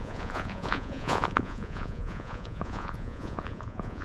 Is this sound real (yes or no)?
no